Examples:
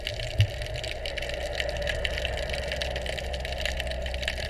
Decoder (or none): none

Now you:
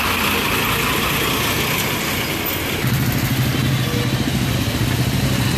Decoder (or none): none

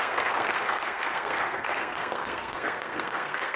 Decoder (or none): codec, SNAC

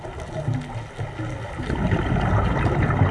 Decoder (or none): none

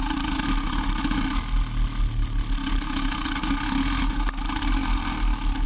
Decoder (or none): none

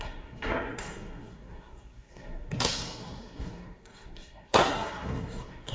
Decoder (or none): codec, SNAC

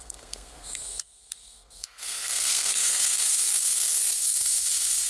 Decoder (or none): codec, SNAC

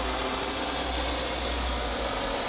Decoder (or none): none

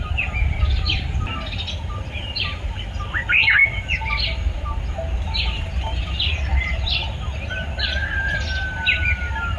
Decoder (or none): none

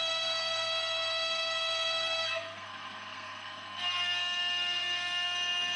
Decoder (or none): codec, SNAC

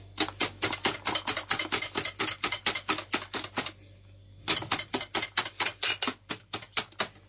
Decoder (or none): none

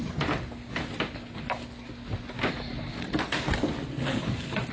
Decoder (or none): none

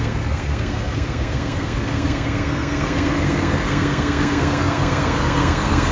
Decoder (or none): codec, SNAC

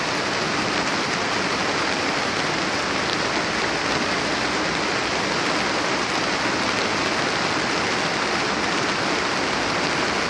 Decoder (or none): none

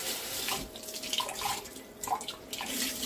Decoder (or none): none